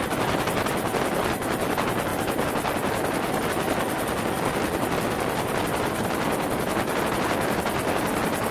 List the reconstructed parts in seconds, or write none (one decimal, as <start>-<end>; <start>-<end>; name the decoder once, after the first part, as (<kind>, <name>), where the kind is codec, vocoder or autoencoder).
none